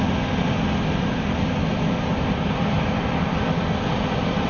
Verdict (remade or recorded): recorded